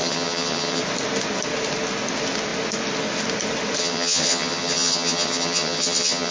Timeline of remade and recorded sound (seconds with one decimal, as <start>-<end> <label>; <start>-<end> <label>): 0.0-0.8 remade; 0.8-3.8 recorded; 3.8-6.3 remade